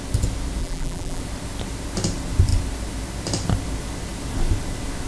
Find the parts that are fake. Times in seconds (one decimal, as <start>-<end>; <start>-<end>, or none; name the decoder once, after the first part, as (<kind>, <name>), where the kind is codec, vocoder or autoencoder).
0.6-1.2 (vocoder, BigVGAN v2)